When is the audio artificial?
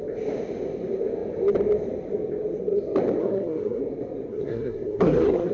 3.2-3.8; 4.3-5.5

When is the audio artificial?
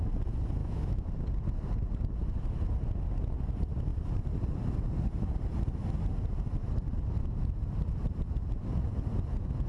0.6-1.1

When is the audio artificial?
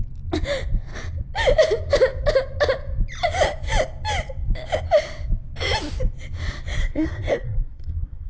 6.8-8.3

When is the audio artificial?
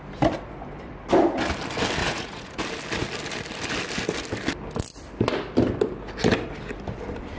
2.0-2.6